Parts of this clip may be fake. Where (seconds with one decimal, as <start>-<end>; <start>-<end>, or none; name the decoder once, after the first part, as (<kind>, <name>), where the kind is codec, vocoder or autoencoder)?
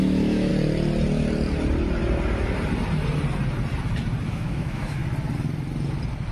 0.0-0.5 (autoencoder, DAC-VAE); 4.3-5.0